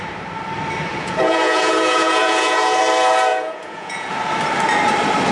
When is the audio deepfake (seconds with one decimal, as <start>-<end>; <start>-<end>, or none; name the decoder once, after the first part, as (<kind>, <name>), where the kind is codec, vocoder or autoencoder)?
0.9-2.8 (vocoder, Vocos); 3.3-4.1